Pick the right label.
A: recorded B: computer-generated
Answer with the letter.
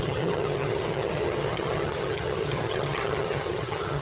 B